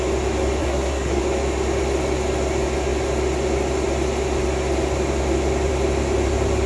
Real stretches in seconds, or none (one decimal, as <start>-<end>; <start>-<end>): 0.0-0.6; 1.2-6.7